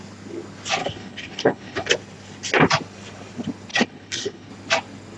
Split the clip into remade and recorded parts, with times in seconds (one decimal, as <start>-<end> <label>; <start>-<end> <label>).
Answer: 0.0-0.8 recorded; 0.8-1.9 remade; 1.9-3.7 recorded; 3.7-4.5 remade; 4.5-5.2 recorded